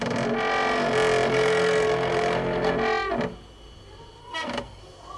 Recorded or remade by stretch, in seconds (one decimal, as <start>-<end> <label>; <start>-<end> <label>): 0.0-1.3 recorded; 1.3-2.7 remade; 2.7-4.2 recorded; 4.2-4.8 remade; 4.8-5.2 recorded